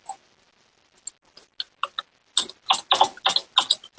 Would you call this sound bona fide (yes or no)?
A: yes